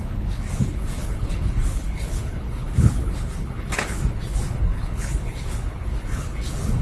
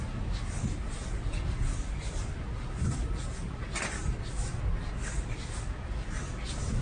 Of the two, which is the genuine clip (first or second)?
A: second